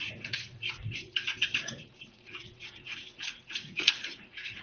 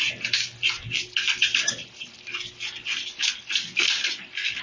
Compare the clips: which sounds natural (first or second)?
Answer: second